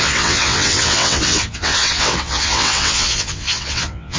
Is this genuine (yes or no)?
no